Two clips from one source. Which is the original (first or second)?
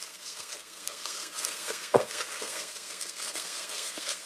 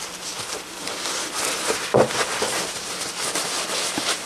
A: second